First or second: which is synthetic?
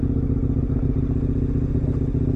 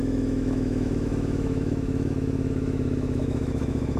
second